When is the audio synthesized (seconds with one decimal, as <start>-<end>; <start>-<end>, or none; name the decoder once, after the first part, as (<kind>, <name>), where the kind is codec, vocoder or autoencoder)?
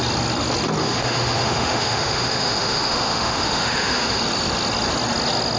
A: 0.8-4.2 (autoencoder, DAC-VAE)